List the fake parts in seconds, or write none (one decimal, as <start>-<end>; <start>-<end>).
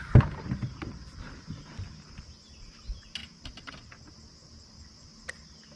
0.0-1.5